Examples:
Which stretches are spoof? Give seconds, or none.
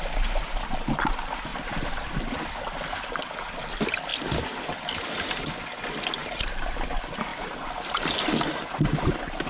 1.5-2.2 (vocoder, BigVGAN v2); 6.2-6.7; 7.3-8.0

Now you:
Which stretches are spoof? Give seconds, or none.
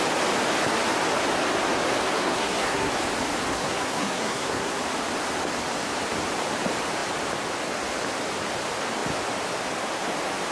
2.2-2.9 (codec, SNAC); 3.5-4.8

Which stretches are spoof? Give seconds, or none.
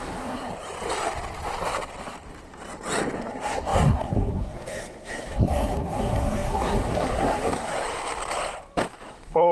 0.0-0.5 (codec, SNAC); 3.2-7.7; 9.1-9.5